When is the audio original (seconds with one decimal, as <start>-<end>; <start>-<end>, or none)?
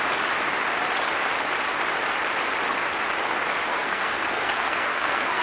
0.0-3.7